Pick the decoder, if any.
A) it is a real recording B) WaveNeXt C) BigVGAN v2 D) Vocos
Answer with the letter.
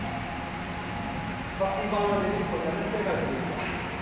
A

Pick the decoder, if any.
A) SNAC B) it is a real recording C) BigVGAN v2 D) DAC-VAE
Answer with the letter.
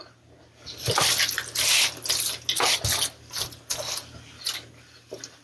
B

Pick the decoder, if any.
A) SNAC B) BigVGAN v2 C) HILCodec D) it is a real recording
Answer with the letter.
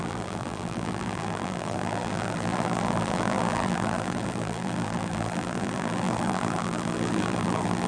B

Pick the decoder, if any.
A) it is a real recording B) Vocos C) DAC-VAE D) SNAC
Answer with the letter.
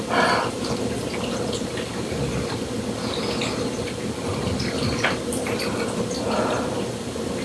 A